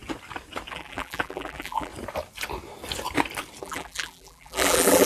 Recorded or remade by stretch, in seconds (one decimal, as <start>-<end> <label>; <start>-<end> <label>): 0.0-0.7 recorded; 0.7-1.9 remade; 1.9-3.6 recorded; 3.6-5.1 remade